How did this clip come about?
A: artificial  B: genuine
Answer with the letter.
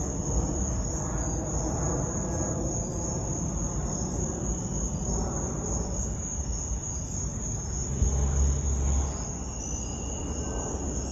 B